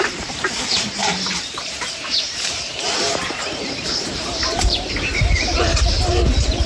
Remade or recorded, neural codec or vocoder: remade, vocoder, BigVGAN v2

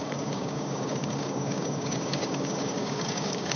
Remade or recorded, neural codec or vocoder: remade, codec, DAC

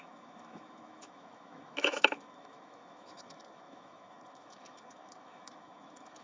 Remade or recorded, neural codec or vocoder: remade, autoencoder, DAC-VAE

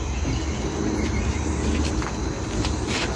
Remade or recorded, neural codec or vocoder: recorded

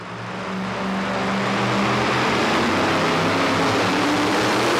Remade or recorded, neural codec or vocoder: recorded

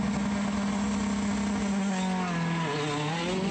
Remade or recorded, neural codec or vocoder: recorded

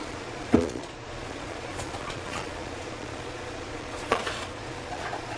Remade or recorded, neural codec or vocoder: remade, vocoder, Vocos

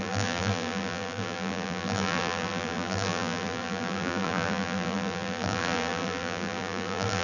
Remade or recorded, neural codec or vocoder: remade, vocoder, BigVGAN v2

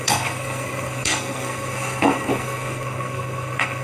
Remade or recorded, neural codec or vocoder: remade, codec, SNAC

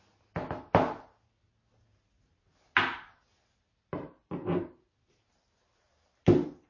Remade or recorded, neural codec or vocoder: recorded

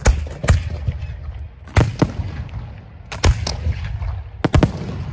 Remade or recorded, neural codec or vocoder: recorded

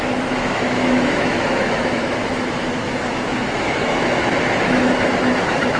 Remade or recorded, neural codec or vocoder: remade, autoencoder, DAC-VAE